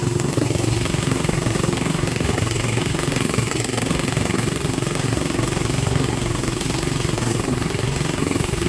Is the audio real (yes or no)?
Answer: no